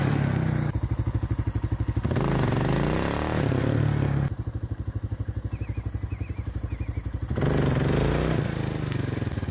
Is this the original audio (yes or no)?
yes